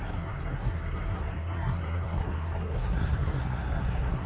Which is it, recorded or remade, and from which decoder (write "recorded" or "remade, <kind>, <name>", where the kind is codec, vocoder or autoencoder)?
remade, codec, SNAC